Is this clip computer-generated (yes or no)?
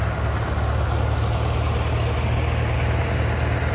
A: no